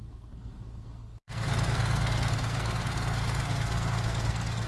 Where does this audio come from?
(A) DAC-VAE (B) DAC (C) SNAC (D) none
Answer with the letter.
C